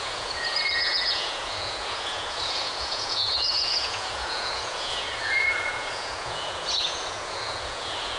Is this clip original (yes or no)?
no